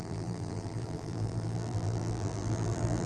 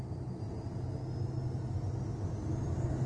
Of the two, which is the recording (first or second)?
second